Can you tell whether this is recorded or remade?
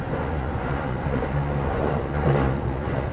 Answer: remade